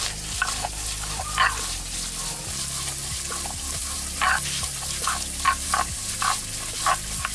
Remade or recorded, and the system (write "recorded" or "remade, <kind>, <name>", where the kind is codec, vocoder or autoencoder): recorded